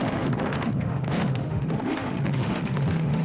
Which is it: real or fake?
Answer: fake